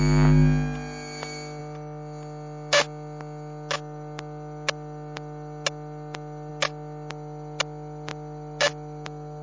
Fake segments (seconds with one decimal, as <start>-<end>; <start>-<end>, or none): none